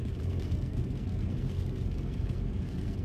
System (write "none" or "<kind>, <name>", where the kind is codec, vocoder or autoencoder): codec, SNAC